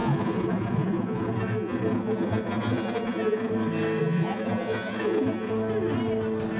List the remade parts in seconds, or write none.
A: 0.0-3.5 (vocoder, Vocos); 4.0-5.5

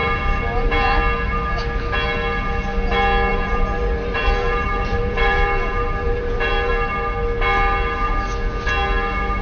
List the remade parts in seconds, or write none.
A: 3.3-6.7 (vocoder, BigVGAN v2)